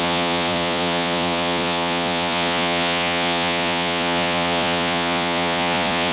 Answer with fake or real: fake